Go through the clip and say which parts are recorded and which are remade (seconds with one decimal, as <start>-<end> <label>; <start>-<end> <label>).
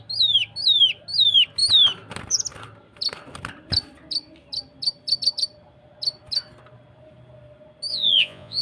0.0-7.9 recorded; 7.9-8.6 remade